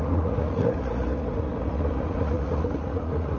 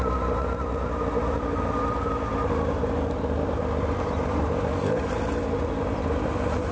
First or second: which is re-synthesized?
first